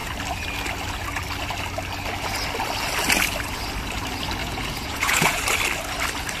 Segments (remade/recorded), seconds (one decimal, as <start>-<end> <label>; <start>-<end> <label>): 0.0-4.4 recorded; 4.4-5.4 remade; 5.4-6.4 recorded